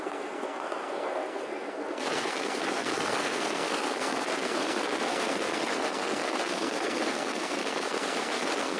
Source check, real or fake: fake